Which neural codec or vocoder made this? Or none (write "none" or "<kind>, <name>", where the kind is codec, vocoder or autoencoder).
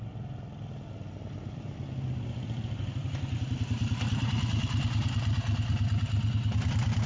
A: vocoder, BigVGAN v2